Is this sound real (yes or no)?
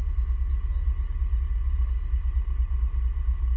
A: yes